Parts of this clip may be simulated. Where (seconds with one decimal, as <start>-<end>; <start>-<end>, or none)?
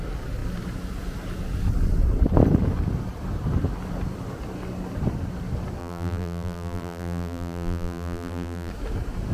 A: 5.8-8.7